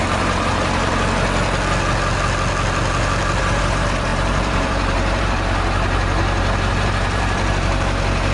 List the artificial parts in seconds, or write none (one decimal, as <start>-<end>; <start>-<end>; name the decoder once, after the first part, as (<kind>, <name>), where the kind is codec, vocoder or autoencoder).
0.0-0.9 (vocoder, BigVGAN v2); 3.4-8.3